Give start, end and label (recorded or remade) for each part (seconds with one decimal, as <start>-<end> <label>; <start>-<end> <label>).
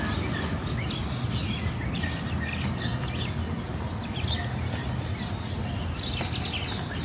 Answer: 0.0-7.0 recorded